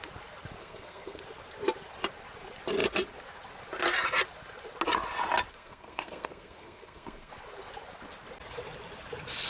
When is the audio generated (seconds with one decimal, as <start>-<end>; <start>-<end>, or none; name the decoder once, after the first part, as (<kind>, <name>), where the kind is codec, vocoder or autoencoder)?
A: 0.6-1.2 (codec, SNAC); 5.5-7.3